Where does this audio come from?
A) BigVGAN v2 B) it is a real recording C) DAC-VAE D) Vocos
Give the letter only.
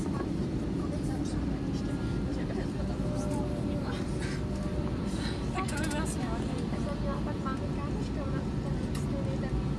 B